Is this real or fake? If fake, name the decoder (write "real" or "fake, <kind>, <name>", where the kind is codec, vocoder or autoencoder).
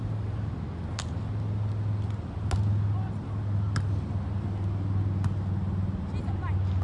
real